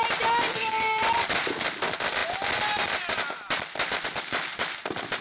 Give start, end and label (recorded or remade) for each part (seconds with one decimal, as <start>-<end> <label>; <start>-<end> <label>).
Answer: 0.0-0.5 recorded; 0.5-1.0 remade; 1.0-5.2 recorded